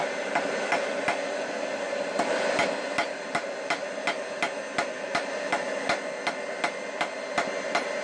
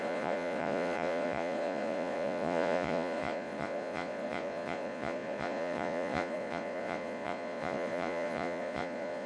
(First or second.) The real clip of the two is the first